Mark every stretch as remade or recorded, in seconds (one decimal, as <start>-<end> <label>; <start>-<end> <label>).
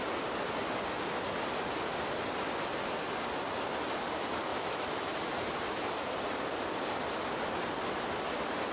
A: 0.0-4.5 recorded; 4.5-5.1 remade; 5.1-8.7 recorded